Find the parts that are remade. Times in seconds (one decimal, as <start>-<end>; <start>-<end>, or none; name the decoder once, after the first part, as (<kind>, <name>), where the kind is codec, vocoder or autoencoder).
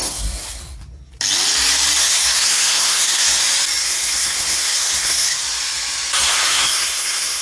0.0-0.6 (codec, SNAC); 2.0-3.4; 3.8-5.4; 6.2-7.4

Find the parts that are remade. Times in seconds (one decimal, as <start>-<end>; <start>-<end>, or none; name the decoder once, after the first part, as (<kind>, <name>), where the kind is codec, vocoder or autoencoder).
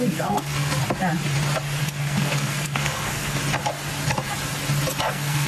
0.0-0.8 (codec, SNAC); 1.8-3.4; 5.1-5.5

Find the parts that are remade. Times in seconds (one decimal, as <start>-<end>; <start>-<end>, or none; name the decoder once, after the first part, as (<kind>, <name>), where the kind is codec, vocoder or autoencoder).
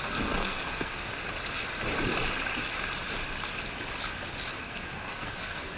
0.0-1.1 (codec, SNAC); 4.6-5.8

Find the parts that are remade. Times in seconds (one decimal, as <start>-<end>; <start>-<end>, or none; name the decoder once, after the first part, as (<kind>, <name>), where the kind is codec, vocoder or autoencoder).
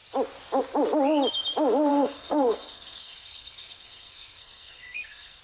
1.9-5.4 (codec, SNAC)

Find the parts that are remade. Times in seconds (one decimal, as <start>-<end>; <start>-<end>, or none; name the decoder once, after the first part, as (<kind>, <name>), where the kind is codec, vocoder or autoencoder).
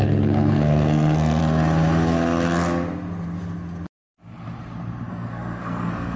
0.0-1.4 (codec, SNAC); 5.1-6.2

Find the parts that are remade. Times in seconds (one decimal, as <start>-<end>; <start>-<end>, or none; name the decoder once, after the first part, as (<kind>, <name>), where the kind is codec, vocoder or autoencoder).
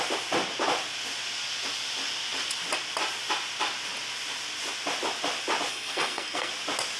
5.7-6.5 (codec, SNAC)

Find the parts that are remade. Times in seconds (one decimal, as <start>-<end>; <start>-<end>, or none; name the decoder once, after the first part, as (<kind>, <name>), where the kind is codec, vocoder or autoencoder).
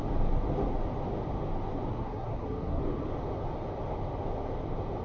1.9-2.8 (codec, SNAC)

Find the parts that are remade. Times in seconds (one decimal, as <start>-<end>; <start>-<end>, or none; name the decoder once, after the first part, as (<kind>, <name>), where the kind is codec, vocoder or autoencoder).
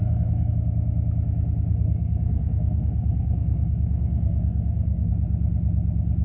0.0-0.5 (codec, SNAC); 1.7-5.1